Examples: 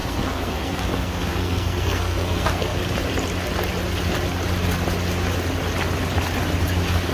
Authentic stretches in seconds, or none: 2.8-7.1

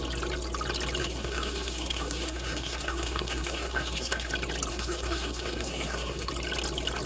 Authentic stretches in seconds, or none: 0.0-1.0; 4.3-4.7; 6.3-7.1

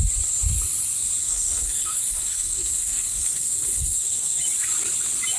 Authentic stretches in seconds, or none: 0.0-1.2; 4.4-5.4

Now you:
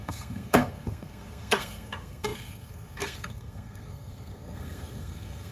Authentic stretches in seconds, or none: none

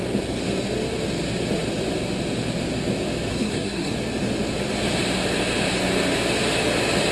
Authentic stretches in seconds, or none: 0.0-3.3; 3.9-7.1

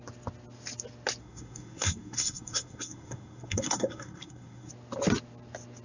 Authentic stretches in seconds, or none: 0.0-1.2; 4.7-5.8